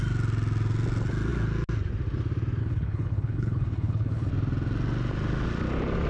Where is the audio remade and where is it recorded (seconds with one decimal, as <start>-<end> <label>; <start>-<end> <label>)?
0.0-2.6 recorded; 2.6-4.3 remade; 4.3-6.1 recorded